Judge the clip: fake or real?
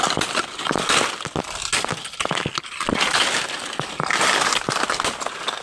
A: real